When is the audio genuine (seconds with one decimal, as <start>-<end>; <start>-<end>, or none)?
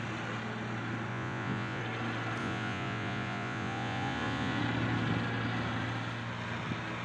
0.0-1.1; 1.8-2.4; 4.6-7.0